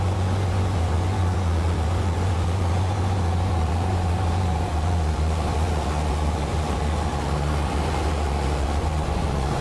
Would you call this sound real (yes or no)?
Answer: no